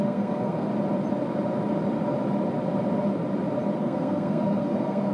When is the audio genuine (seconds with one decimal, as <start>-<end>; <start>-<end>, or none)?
0.7-3.8